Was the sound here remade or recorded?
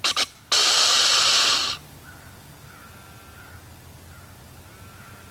recorded